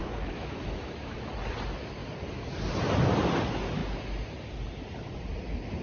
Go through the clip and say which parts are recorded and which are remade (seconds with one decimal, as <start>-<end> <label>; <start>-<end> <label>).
0.0-1.3 remade; 1.3-5.8 recorded